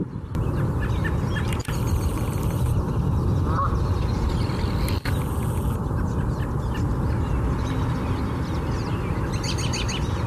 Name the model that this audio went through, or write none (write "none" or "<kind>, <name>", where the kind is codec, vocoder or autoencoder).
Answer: none